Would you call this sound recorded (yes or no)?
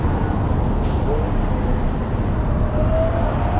yes